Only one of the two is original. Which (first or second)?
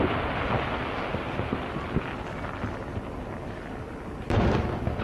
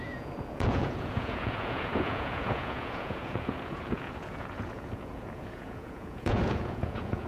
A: first